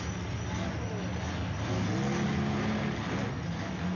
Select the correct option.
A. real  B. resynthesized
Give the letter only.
A